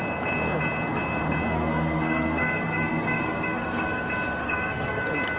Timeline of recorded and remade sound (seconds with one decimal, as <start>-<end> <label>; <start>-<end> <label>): 0.0-1.5 recorded; 1.5-4.0 remade; 4.0-4.4 recorded; 4.4-5.0 remade; 5.0-5.4 recorded

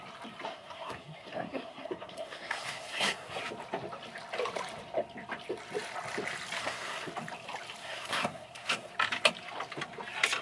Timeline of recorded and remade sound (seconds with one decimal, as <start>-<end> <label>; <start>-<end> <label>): 0.0-0.5 recorded; 0.5-3.4 remade; 3.4-6.6 recorded; 6.6-7.1 remade; 7.1-7.8 recorded; 7.8-8.9 remade; 8.9-10.4 recorded

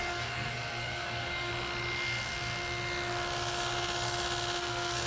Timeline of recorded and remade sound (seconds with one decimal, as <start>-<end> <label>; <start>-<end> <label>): 0.0-1.5 remade; 1.5-4.6 recorded; 4.6-5.1 remade

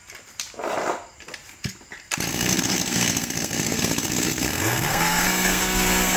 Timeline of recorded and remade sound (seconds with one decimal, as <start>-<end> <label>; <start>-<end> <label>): 0.0-2.3 recorded; 2.3-6.2 remade

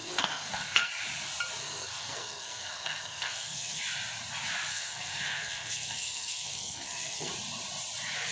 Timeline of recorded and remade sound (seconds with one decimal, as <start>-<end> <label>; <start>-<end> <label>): 0.0-0.9 remade; 0.9-1.6 recorded; 1.6-3.8 remade; 3.8-4.7 recorded; 4.7-7.3 remade; 7.3-8.3 recorded